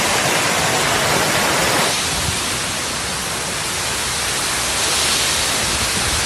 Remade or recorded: recorded